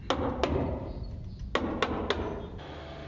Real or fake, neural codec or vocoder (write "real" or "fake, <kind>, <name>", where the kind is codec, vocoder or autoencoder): real